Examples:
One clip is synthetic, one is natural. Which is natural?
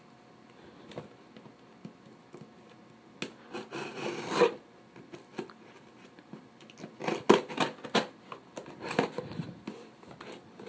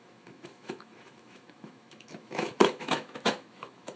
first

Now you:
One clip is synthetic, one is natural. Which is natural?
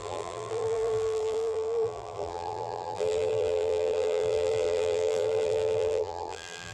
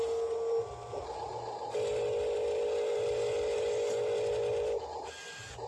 second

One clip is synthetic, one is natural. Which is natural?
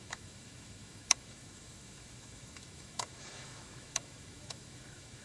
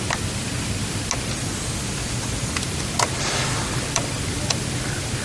second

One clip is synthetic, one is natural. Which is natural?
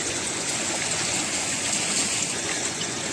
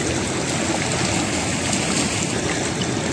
second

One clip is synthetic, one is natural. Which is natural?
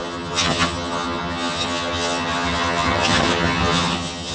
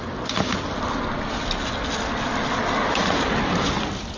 second